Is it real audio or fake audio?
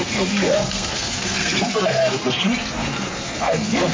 fake